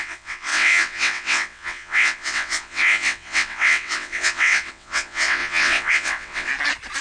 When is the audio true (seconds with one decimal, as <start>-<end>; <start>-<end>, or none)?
6.5-7.0